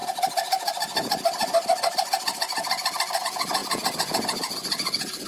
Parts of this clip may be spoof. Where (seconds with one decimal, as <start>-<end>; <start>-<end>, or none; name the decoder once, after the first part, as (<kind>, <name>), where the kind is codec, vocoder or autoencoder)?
3.2-5.3 (vocoder, Vocos)